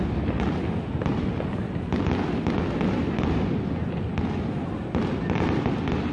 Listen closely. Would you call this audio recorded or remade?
recorded